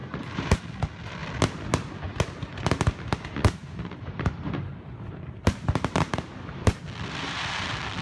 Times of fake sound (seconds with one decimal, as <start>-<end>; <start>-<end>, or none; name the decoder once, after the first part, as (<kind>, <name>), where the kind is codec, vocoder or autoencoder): 0.0-0.6 (vocoder, BigVGAN v2); 3.6-6.8

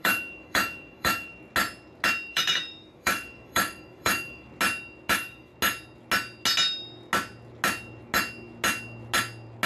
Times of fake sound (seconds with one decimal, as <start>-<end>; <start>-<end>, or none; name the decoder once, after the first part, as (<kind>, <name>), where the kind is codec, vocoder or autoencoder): 0.0-1.3 (autoencoder, DAC-VAE); 2.3-4.5; 5.1-5.5